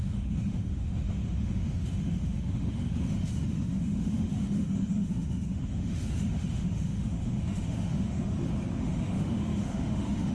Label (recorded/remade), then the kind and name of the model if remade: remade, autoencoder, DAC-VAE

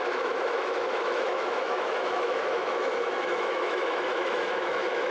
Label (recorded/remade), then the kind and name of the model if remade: remade, autoencoder, DAC-VAE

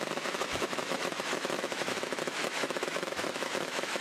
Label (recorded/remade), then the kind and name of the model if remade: remade, autoencoder, DAC-VAE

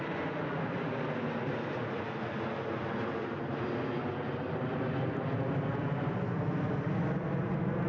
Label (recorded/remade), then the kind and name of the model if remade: recorded